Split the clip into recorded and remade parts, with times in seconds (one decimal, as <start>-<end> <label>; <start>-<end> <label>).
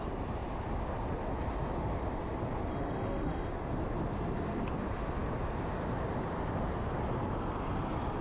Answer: 0.0-2.7 recorded; 2.7-3.5 remade; 3.5-8.2 recorded